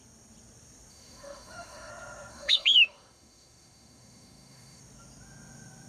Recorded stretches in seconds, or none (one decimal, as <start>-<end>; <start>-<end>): 0.0-0.9; 1.9-2.3; 4.8-5.9